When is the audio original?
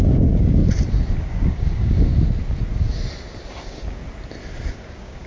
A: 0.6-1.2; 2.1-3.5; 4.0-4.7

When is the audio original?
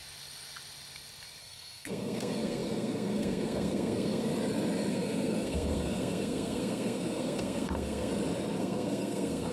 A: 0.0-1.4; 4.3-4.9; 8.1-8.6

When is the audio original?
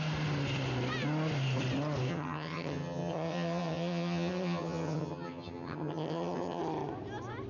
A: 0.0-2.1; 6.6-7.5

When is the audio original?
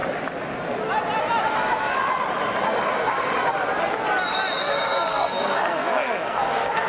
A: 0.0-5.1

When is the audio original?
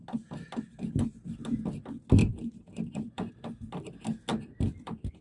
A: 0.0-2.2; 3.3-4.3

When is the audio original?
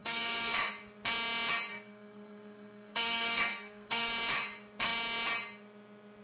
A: 0.7-1.7; 4.1-6.2